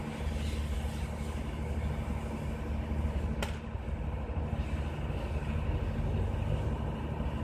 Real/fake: real